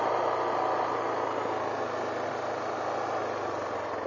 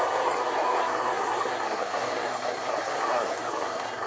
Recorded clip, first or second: first